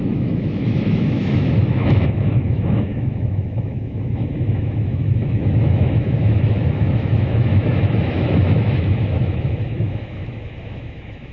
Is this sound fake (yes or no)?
yes